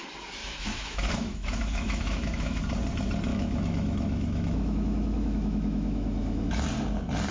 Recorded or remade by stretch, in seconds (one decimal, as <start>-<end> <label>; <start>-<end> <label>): 0.0-0.4 recorded; 0.4-2.6 remade; 2.6-3.3 recorded; 3.3-6.5 remade; 6.5-7.3 recorded